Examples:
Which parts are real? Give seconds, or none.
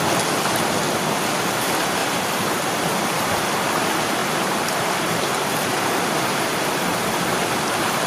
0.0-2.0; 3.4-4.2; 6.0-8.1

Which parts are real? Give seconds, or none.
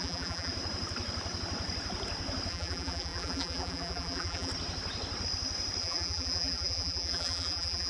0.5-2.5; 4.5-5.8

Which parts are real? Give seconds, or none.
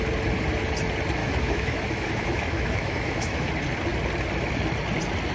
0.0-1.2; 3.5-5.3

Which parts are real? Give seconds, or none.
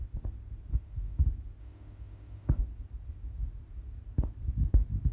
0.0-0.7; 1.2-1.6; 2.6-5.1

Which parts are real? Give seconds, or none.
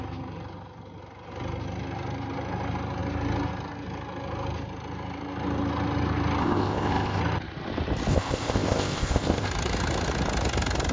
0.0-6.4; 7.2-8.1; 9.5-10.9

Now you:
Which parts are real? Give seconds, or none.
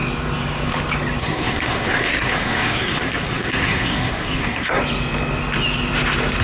0.0-1.2; 4.8-6.4